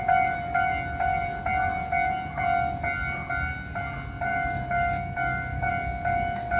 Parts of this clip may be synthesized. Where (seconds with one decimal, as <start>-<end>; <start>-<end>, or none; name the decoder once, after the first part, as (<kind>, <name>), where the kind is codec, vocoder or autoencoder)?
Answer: 4.3-5.7 (codec, DAC)